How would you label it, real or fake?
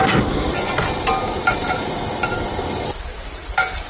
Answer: real